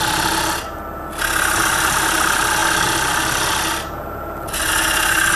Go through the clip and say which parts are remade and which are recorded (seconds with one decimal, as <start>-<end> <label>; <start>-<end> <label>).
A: 0.0-5.4 recorded

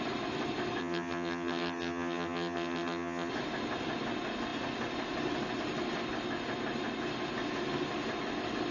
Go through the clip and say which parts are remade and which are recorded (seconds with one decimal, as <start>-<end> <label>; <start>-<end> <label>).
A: 0.0-0.8 recorded; 0.8-3.3 remade; 3.3-8.7 recorded